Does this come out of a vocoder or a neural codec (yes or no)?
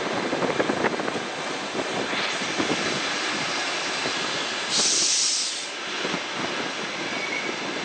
no